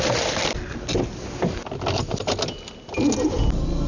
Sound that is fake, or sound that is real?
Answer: real